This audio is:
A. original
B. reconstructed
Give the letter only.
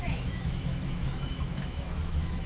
B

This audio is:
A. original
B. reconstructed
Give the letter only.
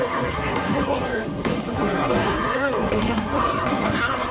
B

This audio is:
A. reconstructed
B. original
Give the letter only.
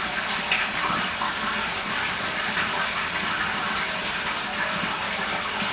B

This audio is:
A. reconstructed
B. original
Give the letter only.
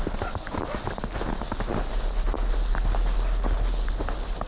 B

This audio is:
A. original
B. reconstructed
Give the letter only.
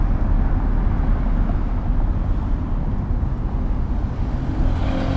A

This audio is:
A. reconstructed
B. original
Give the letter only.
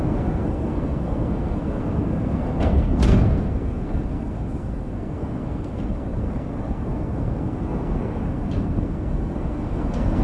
A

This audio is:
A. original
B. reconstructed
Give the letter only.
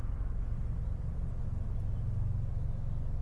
A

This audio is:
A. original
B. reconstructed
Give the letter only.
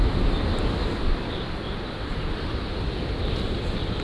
A